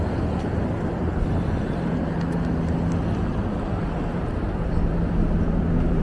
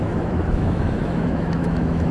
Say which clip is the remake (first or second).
second